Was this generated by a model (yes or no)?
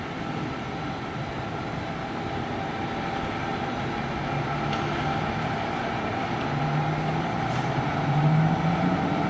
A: no